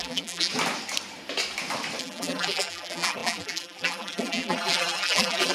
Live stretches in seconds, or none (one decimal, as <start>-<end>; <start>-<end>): 0.5-2.0

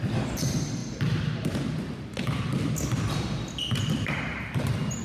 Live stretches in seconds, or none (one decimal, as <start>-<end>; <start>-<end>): 0.8-3.8